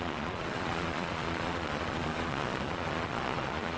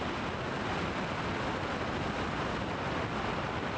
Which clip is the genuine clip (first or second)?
second